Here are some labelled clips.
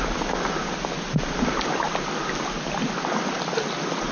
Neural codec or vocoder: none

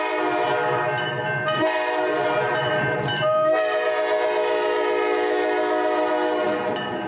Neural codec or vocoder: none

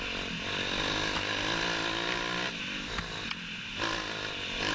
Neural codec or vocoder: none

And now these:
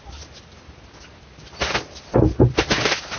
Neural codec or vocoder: none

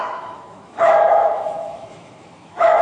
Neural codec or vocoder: autoencoder, DAC-VAE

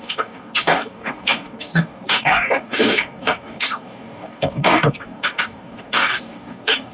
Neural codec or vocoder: codec, DAC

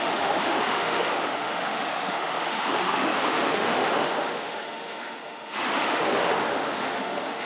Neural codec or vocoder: autoencoder, DAC-VAE